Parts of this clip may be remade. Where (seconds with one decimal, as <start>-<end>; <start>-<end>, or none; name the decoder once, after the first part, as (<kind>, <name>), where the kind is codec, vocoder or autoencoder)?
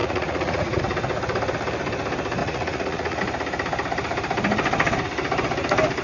0.0-0.8 (vocoder, Vocos); 2.4-3.2